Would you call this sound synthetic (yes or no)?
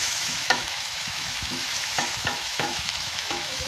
yes